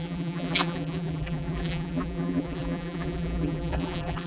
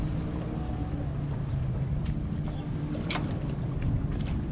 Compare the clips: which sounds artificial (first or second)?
first